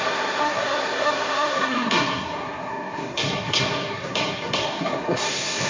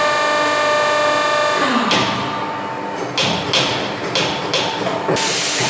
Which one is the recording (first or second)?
second